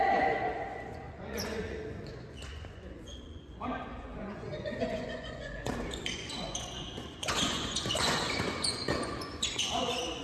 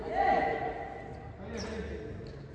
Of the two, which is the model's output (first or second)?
first